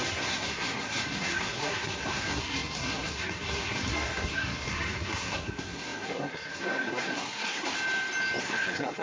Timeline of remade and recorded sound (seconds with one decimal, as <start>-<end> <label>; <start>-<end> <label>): 0.0-7.7 remade; 7.7-8.4 recorded; 8.4-9.0 remade